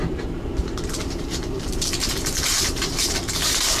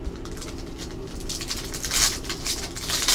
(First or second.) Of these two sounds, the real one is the second